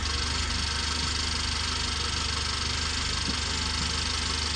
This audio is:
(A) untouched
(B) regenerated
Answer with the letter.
A